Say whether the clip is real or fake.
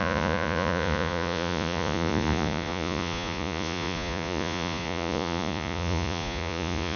fake